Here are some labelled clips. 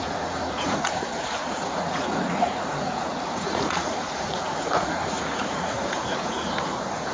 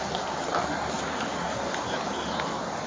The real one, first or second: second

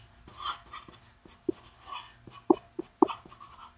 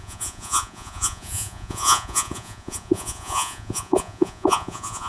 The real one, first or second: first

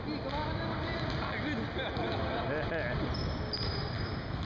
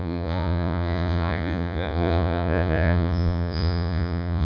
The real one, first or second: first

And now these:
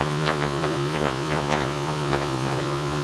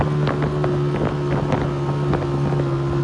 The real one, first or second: second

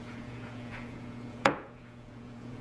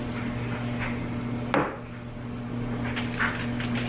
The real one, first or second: second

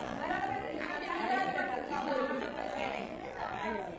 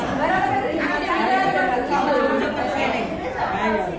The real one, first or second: second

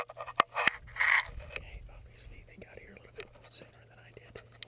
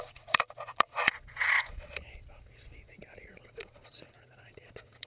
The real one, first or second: first